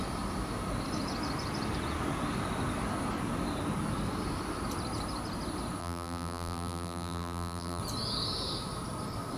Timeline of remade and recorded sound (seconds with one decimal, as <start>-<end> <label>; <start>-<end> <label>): 0.0-5.8 recorded; 5.8-7.8 remade; 7.8-9.4 recorded

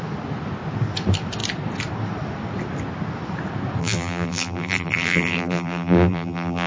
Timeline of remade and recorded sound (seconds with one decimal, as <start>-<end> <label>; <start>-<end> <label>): 0.0-3.8 recorded; 3.8-6.7 remade